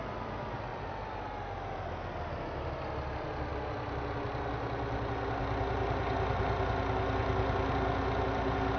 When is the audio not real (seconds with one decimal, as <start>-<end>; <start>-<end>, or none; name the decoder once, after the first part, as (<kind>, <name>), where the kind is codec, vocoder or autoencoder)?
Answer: 0.7-2.3 (vocoder, BigVGAN v2)